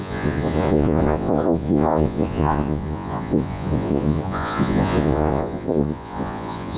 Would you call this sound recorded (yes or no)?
no